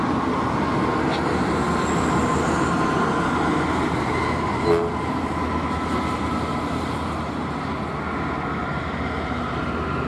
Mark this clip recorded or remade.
recorded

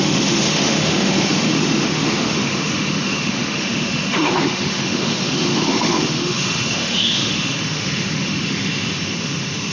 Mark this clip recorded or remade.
remade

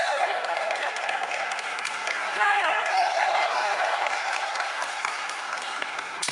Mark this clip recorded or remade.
remade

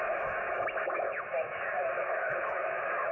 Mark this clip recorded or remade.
remade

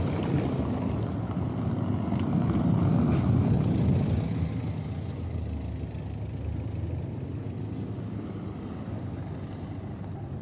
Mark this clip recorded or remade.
recorded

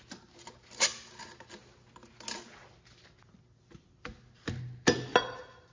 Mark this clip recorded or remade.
recorded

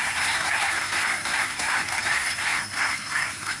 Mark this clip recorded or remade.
remade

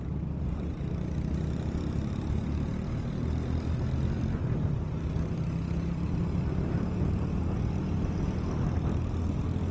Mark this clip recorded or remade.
recorded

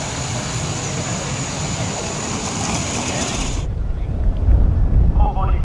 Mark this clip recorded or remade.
remade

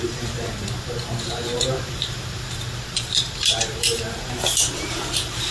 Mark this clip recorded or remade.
remade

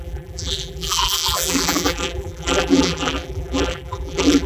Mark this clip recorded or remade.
remade